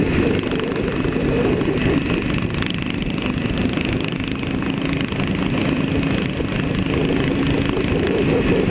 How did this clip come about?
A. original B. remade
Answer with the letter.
A